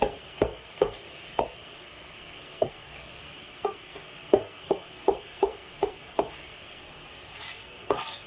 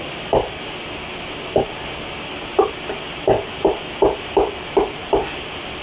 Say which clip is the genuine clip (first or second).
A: second